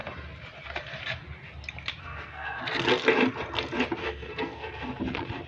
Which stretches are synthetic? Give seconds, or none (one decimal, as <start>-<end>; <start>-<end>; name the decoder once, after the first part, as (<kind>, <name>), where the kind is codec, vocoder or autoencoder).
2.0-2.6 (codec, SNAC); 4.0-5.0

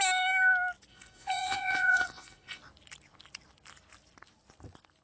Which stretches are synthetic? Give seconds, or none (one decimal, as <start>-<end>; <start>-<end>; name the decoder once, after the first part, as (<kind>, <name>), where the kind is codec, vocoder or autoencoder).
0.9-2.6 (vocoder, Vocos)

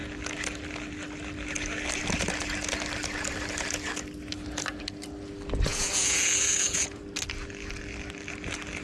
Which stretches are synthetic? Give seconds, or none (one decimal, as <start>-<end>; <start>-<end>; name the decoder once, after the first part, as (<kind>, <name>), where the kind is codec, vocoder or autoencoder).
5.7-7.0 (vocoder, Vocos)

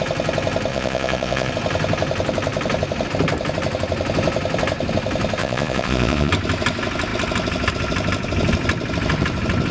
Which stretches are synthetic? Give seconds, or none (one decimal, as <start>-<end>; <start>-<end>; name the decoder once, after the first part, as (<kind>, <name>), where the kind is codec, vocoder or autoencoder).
0.7-1.5 (vocoder, Vocos); 5.4-6.3

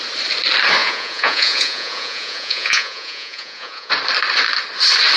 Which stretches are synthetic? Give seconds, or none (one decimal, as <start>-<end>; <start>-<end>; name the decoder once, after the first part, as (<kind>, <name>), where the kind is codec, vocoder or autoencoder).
0.8-3.9 (vocoder, Vocos)